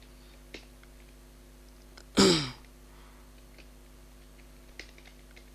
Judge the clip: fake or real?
real